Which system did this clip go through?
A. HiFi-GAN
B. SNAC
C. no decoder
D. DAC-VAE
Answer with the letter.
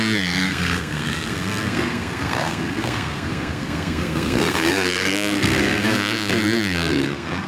B